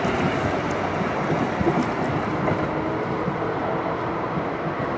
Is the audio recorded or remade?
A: recorded